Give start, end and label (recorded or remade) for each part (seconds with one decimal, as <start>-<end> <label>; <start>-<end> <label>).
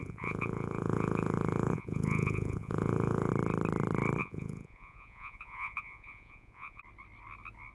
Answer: 0.0-3.3 remade; 3.3-4.2 recorded; 4.2-6.8 remade; 6.8-7.7 recorded